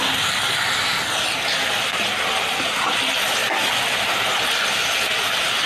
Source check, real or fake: real